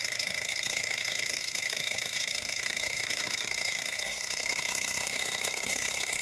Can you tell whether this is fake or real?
fake